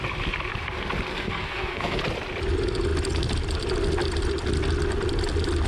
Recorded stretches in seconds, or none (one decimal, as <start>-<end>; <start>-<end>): 0.0-1.1; 2.0-5.7

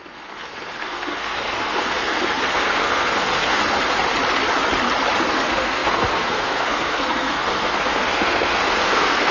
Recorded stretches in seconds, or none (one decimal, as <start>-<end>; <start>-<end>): 3.8-5.3

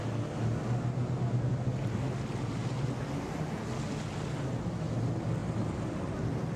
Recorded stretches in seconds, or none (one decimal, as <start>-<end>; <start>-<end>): 0.0-6.6

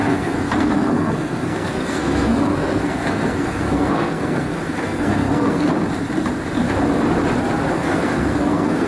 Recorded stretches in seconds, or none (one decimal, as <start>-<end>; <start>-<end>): 5.7-7.7